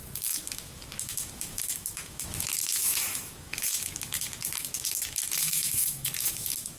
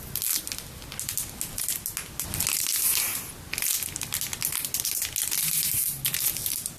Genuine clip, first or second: second